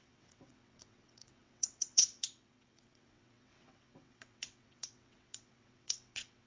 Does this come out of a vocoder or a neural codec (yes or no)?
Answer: yes